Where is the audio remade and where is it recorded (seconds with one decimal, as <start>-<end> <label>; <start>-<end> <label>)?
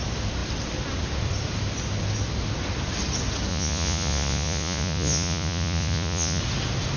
0.0-3.5 recorded; 3.5-6.4 remade; 6.4-7.0 recorded